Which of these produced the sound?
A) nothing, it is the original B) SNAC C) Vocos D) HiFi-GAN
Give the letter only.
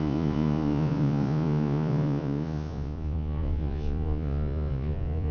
C